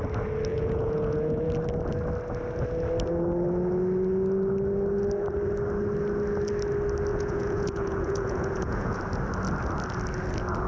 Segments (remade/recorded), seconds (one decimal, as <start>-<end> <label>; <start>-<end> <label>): 0.0-0.5 recorded; 0.5-1.5 remade; 1.5-7.1 recorded; 7.1-9.0 remade; 9.0-10.7 recorded